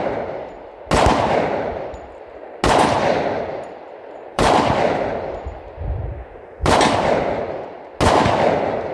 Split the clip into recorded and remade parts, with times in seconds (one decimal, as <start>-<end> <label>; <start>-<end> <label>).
0.0-4.3 recorded; 4.3-7.3 remade; 7.3-8.9 recorded